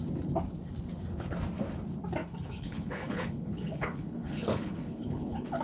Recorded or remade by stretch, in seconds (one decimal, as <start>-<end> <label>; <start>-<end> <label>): 0.0-2.2 recorded; 2.2-5.6 remade